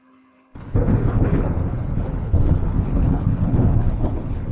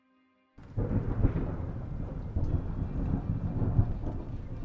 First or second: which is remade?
first